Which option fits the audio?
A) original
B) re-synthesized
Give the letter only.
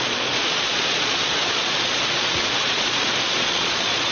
B